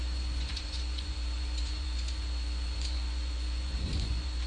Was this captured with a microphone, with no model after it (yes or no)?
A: no